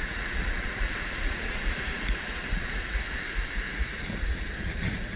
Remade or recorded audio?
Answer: remade